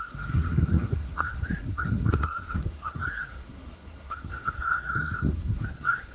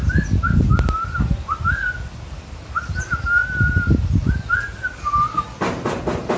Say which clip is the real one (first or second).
second